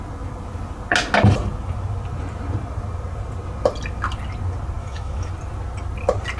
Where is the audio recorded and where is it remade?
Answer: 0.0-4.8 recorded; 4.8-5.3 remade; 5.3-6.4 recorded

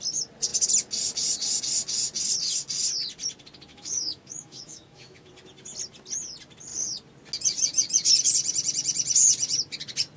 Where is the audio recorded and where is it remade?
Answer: 0.0-3.7 recorded; 3.7-5.3 remade; 5.3-10.2 recorded

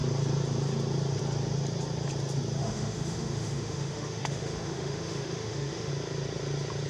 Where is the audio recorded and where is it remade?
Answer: 0.0-2.6 recorded; 2.6-5.9 remade; 5.9-6.9 recorded

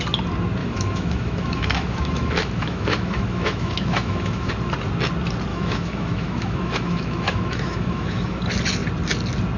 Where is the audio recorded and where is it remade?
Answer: 0.0-0.6 recorded; 0.6-4.5 remade; 4.5-5.5 recorded; 5.5-8.4 remade; 8.4-9.6 recorded

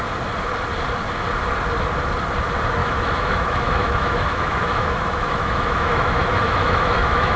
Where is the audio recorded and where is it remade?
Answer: 0.0-2.8 recorded; 2.8-7.4 remade

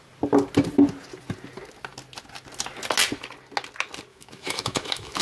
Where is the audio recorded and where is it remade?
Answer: 0.0-4.1 recorded; 4.1-5.2 remade